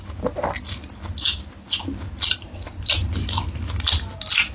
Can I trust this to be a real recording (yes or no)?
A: yes